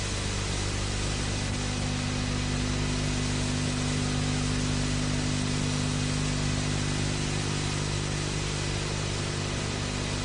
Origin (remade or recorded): recorded